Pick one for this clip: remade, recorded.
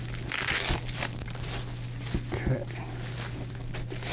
recorded